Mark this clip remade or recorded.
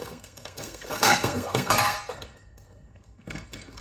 remade